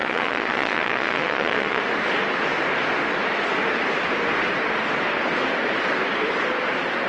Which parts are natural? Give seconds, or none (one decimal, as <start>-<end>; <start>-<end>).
1.8-7.1